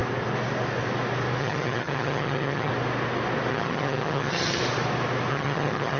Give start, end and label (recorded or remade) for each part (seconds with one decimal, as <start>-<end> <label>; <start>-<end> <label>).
0.0-1.4 recorded; 1.4-2.7 remade; 2.7-3.5 recorded; 3.5-4.6 remade; 4.6-5.3 recorded; 5.3-6.0 remade